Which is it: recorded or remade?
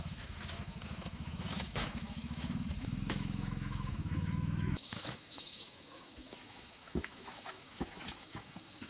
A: remade